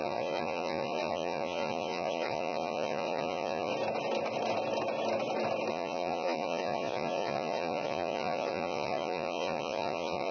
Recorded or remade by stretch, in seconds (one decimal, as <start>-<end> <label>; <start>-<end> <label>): 0.0-3.7 remade; 3.7-5.7 recorded; 5.7-10.3 remade